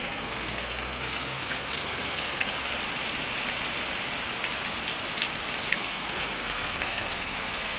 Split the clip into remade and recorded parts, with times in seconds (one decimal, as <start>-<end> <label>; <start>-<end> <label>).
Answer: 0.0-2.5 remade; 2.5-5.7 recorded; 5.7-7.8 remade